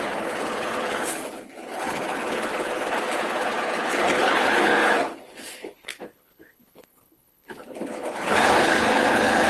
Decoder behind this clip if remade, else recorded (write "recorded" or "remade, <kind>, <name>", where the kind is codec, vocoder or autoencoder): remade, codec, HILCodec